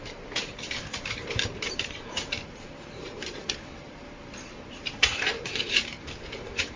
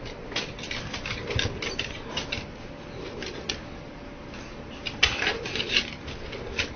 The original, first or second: second